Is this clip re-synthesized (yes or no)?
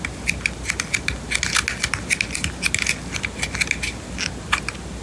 no